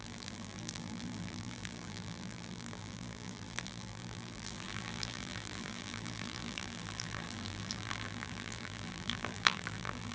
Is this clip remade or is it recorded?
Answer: remade